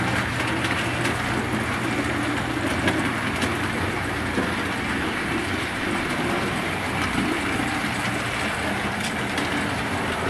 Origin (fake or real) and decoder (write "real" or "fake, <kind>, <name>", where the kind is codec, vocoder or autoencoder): real